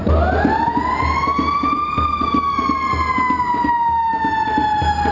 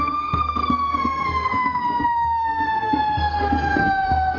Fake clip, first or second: second